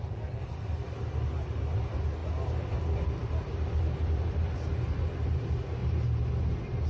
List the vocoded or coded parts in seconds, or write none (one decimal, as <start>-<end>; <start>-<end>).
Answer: none